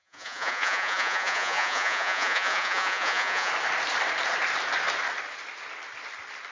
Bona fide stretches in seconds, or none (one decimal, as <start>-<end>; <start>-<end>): 3.5-6.5